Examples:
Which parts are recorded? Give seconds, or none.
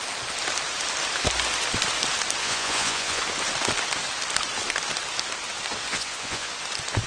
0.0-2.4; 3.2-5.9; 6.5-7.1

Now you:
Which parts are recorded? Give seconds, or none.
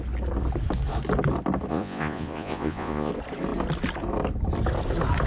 0.0-1.7; 3.1-5.3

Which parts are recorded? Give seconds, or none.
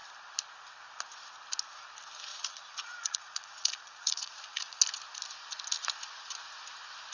0.0-2.3; 4.8-7.1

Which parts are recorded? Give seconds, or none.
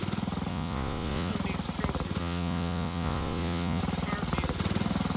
0.0-0.5; 1.3-2.2; 3.8-5.2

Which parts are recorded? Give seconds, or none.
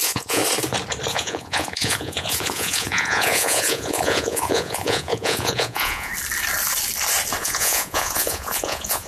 0.4-1.1; 6.1-7.4